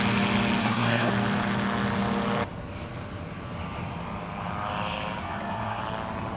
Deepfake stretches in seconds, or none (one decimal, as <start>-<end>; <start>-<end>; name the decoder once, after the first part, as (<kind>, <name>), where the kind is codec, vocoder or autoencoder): 0.6-1.1 (codec, SNAC); 5.2-5.8